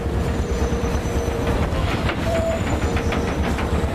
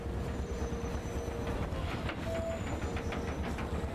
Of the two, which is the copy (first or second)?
first